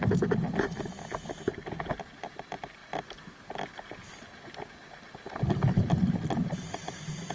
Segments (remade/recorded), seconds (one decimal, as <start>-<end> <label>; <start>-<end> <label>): 0.0-7.3 recorded